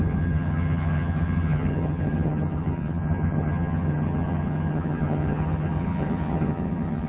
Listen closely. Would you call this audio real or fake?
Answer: fake